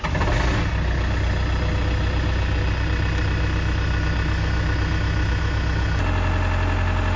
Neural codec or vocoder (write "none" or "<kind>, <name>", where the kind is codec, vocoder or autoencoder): none